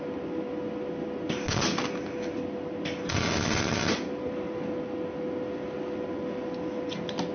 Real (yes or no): yes